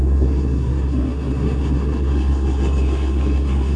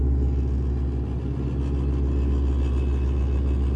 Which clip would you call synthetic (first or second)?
first